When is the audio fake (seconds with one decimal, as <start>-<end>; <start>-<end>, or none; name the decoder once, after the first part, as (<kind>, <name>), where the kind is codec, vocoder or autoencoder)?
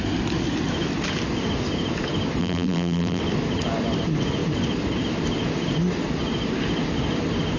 2.4-3.2 (vocoder, BigVGAN v2)